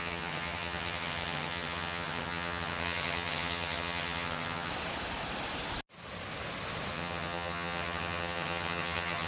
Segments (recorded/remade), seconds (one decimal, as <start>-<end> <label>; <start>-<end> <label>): 0.0-4.7 remade; 4.7-6.9 recorded; 6.9-9.3 remade